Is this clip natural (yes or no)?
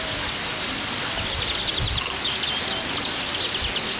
yes